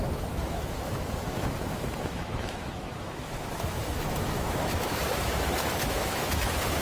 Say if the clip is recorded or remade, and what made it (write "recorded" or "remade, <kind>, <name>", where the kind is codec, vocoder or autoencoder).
remade, autoencoder, DAC-VAE